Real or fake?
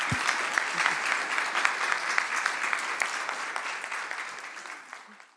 real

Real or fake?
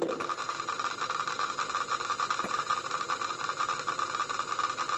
real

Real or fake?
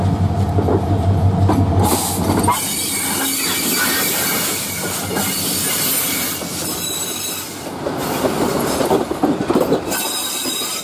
real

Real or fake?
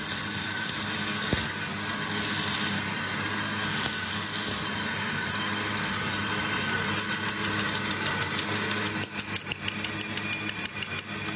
real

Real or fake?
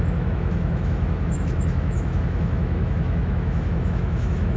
fake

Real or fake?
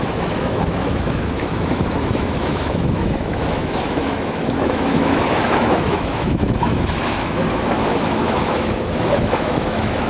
fake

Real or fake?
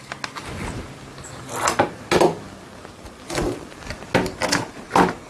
real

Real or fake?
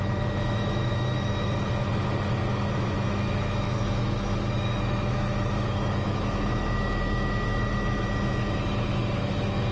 fake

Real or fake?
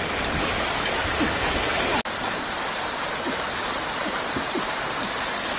real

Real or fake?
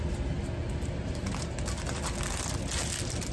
real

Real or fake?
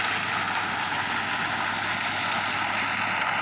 real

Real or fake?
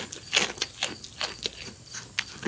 real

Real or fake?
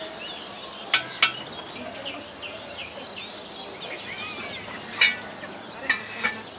real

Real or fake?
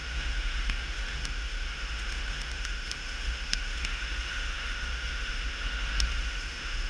fake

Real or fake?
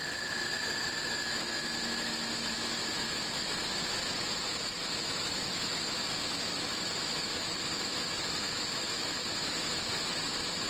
fake